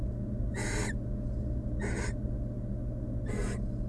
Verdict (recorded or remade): recorded